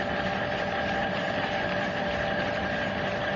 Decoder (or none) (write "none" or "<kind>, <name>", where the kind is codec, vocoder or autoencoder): none